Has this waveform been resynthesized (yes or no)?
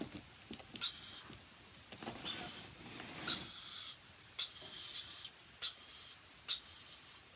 no